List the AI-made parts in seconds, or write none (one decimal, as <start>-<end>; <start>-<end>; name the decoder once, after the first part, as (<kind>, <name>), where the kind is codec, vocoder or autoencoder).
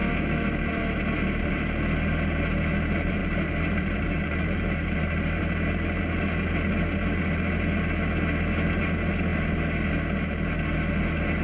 3.2-5.4 (vocoder, BigVGAN v2)